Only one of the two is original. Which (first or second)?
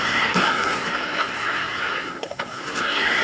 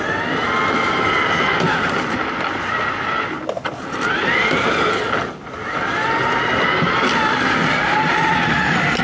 second